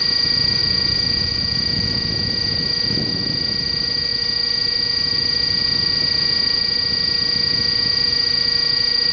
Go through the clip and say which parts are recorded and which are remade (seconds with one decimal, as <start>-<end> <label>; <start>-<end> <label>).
0.0-9.1 recorded